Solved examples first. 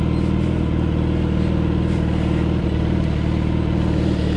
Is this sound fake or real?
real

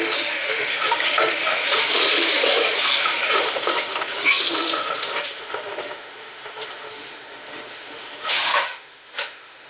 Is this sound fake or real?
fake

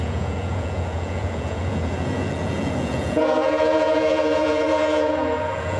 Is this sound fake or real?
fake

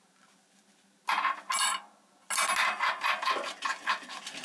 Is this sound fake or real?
real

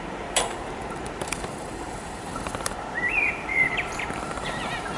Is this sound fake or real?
fake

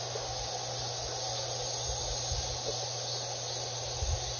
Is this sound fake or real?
real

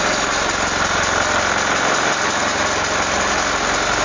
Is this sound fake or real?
real